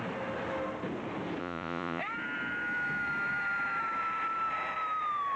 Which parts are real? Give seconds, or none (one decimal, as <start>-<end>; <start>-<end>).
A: 0.0-1.4; 2.0-5.4